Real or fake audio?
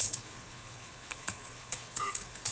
fake